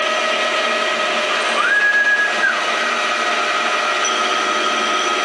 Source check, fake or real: real